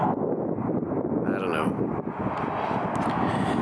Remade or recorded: recorded